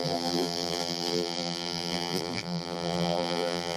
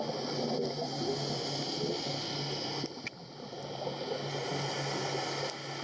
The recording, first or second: second